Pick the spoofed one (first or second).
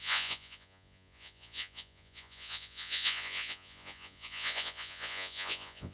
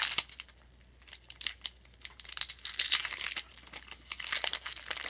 first